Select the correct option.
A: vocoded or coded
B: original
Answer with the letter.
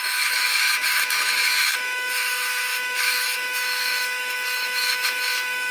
A